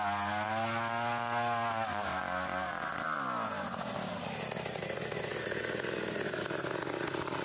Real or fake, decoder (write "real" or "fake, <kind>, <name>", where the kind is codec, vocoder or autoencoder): real